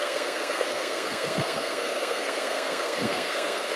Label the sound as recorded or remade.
remade